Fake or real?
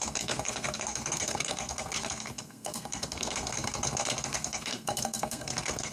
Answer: fake